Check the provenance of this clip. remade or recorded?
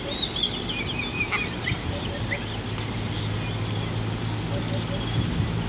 recorded